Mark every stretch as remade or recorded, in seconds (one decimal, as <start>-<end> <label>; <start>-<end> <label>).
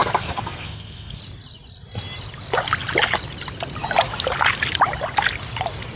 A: 0.0-1.2 remade; 1.2-6.0 recorded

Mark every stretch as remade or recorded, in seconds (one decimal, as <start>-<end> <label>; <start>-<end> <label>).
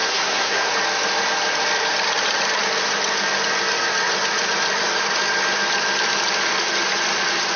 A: 0.0-0.7 remade; 0.7-7.6 recorded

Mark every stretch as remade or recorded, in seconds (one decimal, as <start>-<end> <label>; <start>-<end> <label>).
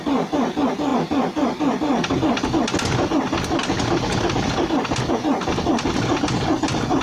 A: 0.0-7.0 recorded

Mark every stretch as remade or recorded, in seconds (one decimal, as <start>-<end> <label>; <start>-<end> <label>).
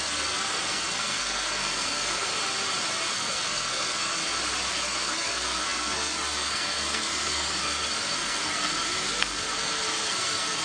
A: 0.0-2.3 remade; 2.3-3.1 recorded; 3.1-4.2 remade; 4.2-4.7 recorded; 4.7-10.6 remade